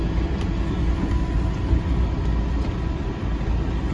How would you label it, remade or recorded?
recorded